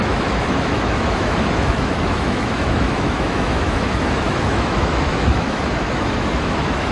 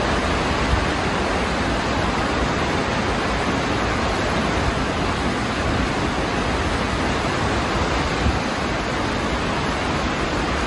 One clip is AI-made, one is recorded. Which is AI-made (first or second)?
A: first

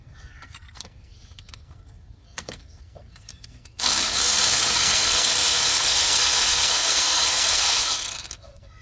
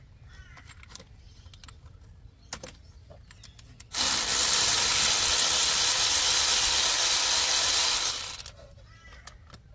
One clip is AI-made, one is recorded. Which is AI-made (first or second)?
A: first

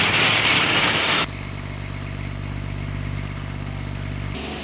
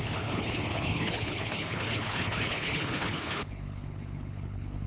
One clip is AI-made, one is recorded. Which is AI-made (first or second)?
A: second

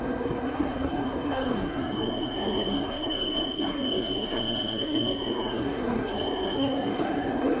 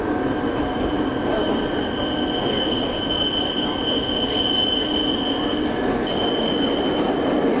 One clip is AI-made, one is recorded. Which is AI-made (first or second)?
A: first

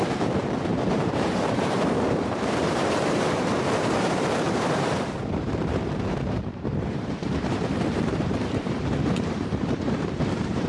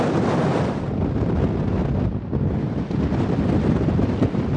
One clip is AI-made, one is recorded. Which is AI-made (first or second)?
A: first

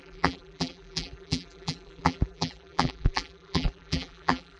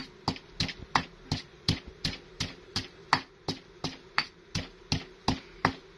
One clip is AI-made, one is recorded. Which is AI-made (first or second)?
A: first